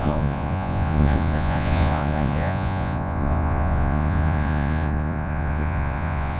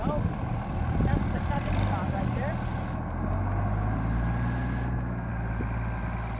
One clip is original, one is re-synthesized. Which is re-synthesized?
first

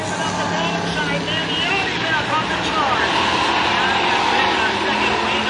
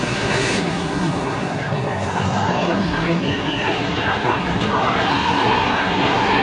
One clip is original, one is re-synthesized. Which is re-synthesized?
second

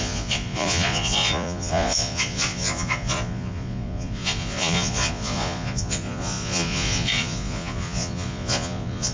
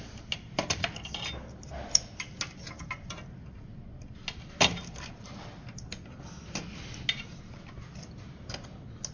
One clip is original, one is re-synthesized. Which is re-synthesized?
first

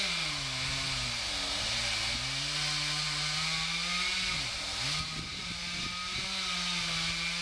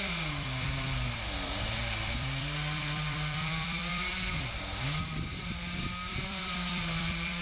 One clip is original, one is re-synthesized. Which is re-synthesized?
second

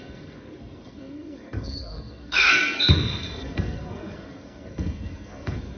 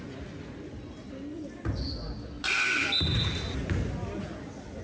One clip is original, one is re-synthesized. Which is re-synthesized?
first